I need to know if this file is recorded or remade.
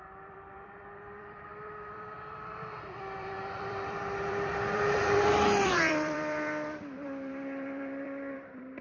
remade